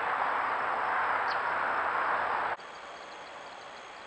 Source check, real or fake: real